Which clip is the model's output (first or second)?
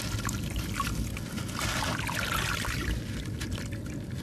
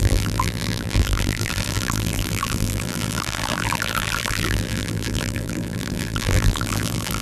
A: second